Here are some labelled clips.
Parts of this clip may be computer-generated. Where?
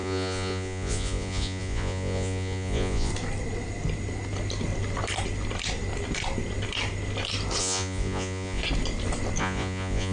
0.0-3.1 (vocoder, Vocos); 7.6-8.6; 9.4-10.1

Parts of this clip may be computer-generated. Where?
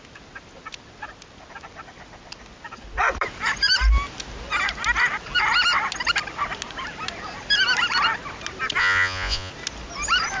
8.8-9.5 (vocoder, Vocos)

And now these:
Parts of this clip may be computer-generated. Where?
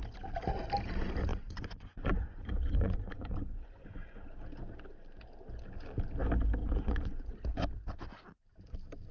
1.3-4.2 (vocoder, Vocos); 6.6-7.3